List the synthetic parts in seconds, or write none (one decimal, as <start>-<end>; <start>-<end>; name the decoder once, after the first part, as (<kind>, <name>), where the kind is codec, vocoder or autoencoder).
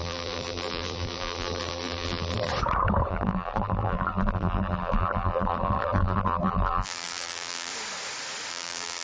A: 0.0-2.5 (vocoder, BigVGAN v2); 3.1-7.7; 8.5-9.0